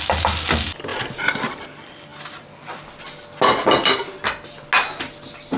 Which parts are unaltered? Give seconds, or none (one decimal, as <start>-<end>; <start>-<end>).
0.0-5.6